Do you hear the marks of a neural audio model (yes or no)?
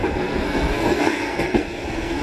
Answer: yes